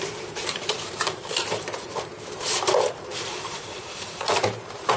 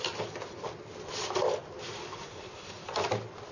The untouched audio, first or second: second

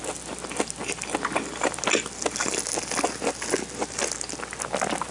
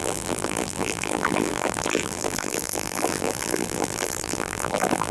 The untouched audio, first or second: first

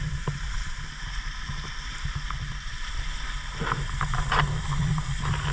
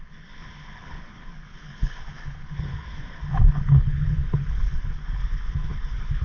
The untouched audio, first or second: first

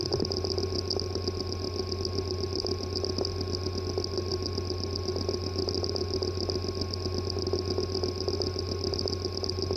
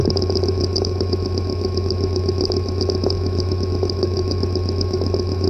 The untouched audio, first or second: first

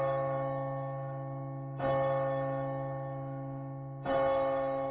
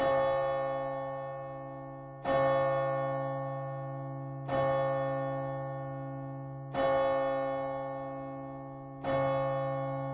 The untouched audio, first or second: second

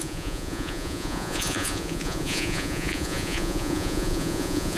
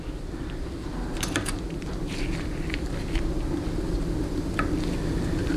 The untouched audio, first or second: second